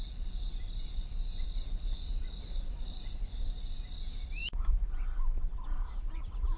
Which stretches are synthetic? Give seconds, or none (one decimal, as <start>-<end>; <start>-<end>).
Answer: none